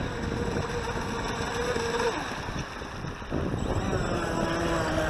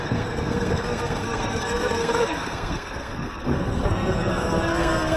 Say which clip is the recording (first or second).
first